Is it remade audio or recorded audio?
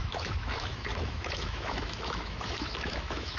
remade